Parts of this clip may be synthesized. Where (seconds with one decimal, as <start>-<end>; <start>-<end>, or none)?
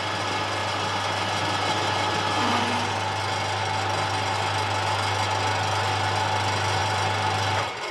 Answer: 6.8-7.9